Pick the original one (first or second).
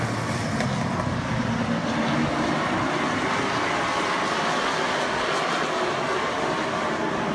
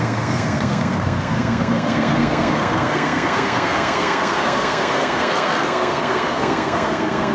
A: first